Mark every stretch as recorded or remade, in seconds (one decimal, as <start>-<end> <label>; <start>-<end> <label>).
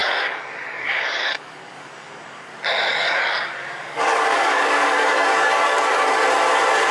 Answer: 0.0-2.5 remade; 2.5-2.9 recorded; 2.9-6.2 remade; 6.2-6.9 recorded